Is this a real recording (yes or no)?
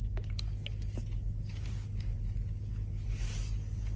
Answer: yes